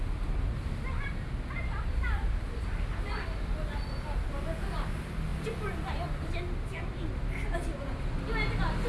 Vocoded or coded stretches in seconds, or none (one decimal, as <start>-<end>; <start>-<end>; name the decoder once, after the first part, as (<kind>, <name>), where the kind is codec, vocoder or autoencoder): none